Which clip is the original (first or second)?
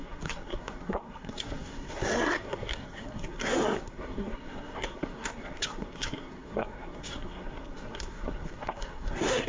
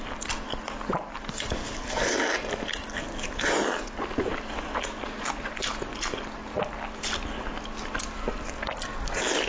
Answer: second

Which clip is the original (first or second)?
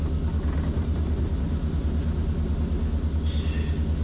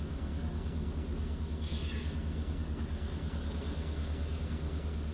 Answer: first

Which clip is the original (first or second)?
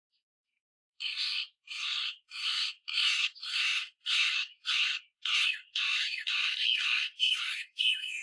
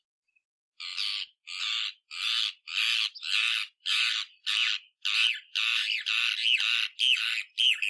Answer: second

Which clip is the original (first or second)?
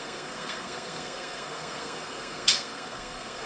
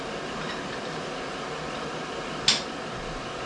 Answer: second